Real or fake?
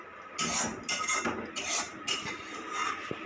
real